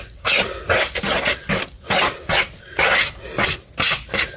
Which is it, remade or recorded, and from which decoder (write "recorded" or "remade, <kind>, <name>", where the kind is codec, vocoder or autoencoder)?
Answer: recorded